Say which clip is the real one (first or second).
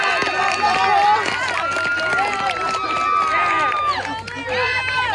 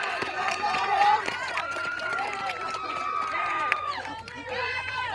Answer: first